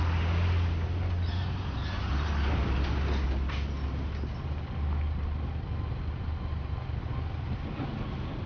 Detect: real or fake real